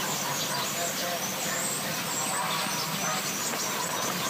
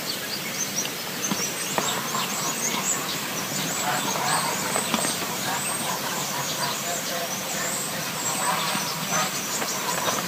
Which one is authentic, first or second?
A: first